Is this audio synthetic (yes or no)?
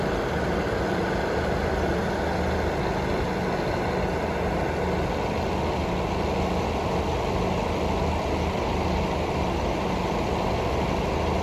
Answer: no